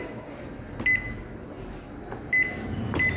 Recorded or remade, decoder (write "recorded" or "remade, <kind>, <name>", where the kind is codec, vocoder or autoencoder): recorded